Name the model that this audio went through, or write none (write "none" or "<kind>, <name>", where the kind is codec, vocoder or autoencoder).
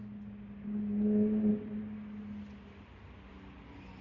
none